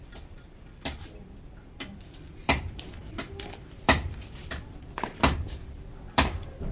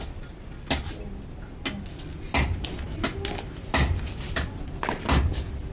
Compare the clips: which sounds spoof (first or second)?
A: first